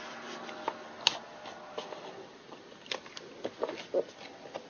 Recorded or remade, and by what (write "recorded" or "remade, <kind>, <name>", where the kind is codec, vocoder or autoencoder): recorded